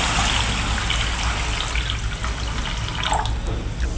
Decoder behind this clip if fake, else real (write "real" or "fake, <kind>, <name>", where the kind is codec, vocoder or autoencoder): real